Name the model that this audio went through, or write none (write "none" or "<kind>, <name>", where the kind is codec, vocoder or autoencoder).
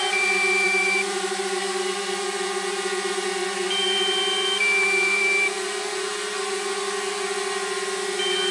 vocoder, BigVGAN v2